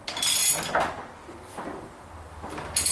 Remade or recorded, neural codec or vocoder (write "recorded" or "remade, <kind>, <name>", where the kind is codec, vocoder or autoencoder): recorded